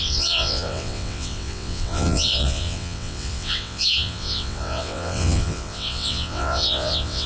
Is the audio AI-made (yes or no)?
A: yes